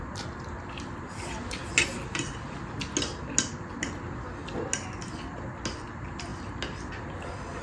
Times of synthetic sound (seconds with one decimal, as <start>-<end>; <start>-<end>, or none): none